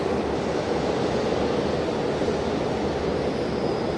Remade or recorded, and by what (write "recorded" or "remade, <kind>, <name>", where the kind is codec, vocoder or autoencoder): recorded